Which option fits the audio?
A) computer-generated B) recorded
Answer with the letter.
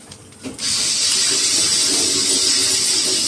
B